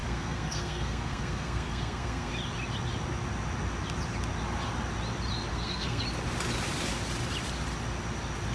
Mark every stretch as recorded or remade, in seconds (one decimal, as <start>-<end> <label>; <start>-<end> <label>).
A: 0.0-2.3 remade; 2.3-5.5 recorded; 5.5-6.0 remade; 6.0-8.5 recorded